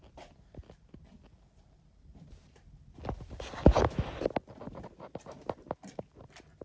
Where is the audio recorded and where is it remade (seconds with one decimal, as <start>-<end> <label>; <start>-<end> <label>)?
0.0-6.6 recorded